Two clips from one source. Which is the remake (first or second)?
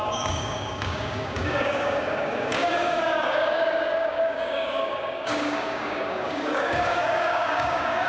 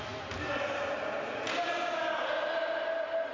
first